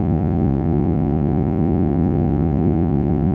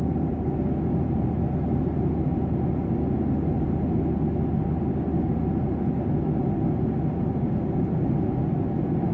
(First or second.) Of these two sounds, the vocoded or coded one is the first